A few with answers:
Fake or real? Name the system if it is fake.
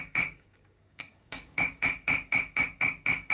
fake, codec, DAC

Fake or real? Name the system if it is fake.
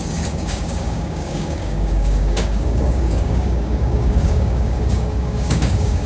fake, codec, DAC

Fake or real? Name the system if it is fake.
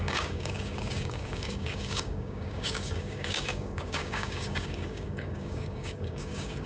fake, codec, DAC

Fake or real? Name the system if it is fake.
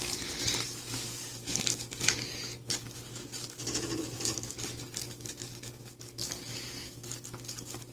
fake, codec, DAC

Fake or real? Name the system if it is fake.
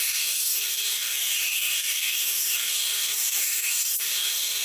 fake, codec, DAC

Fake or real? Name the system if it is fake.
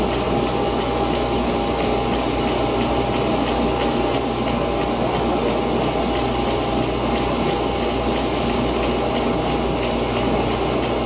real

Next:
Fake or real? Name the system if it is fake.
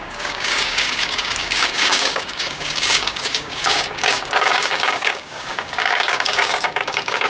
fake, codec, DAC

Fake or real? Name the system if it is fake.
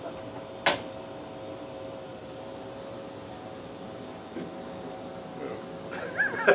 real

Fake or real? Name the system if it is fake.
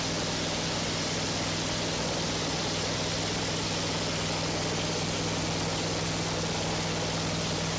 real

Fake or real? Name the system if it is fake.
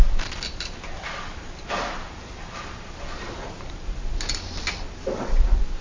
real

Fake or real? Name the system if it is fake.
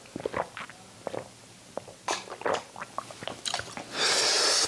real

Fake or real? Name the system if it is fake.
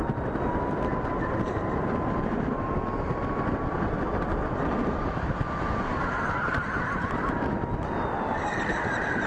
real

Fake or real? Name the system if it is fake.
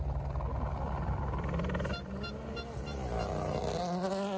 real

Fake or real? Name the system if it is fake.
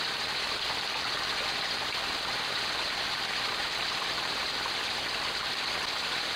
real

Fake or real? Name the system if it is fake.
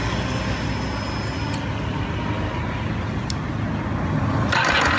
real